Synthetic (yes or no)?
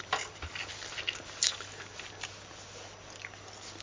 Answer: no